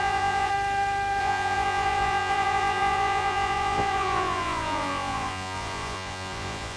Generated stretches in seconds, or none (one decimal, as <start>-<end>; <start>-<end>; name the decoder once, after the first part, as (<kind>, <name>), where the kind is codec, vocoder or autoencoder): 0.0-0.5 (vocoder, Vocos); 1.2-6.8